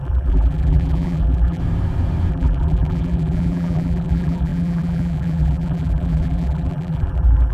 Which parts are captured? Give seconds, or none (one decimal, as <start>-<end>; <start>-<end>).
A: 1.6-2.3